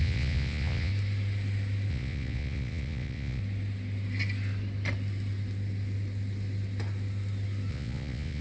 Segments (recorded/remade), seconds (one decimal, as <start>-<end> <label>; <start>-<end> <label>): 0.0-0.9 remade; 0.9-1.9 recorded; 1.9-3.4 remade; 3.4-7.7 recorded; 7.7-8.4 remade